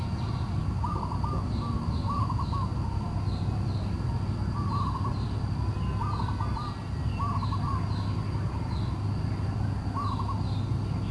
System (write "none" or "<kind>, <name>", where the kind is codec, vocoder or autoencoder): none